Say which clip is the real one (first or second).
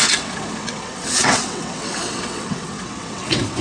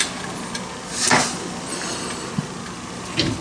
second